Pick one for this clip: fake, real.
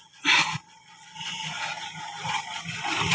real